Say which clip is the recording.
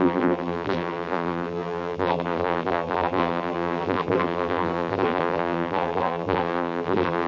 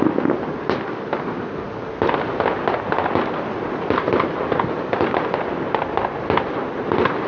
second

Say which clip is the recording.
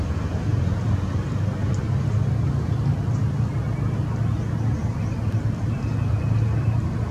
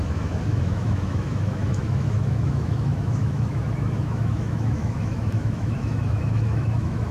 first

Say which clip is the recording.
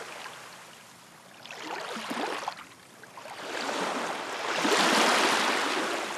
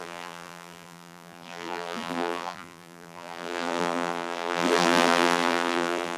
first